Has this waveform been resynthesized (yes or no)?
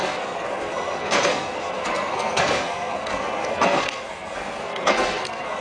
yes